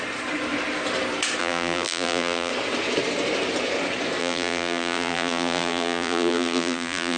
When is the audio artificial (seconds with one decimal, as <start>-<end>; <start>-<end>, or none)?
1.4-2.5; 4.2-7.2